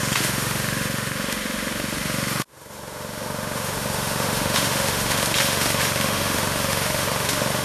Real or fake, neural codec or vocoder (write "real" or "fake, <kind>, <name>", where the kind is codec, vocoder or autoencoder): fake, autoencoder, DAC-VAE